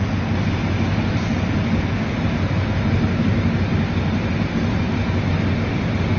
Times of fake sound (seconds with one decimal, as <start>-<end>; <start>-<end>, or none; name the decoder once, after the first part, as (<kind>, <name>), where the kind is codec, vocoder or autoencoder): none